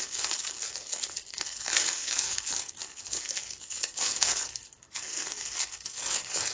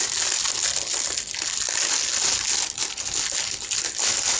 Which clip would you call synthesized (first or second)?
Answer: first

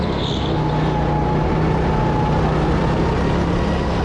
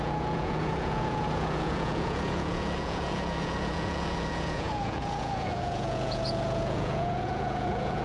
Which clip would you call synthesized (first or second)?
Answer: second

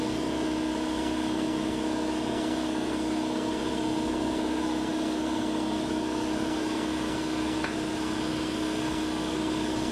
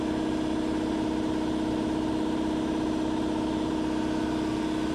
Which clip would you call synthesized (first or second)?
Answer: first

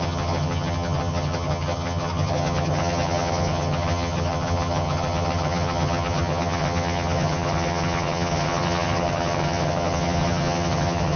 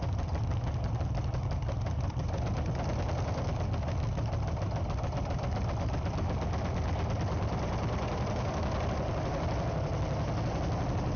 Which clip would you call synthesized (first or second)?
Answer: first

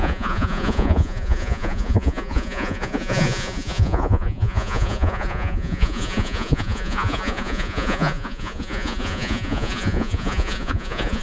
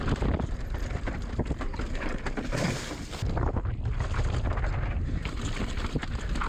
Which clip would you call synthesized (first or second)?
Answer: first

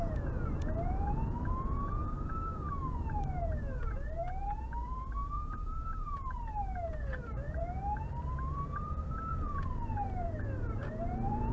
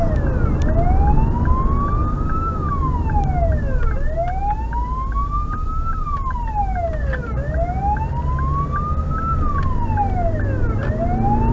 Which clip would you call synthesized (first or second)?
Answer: first